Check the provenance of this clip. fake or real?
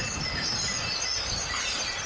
real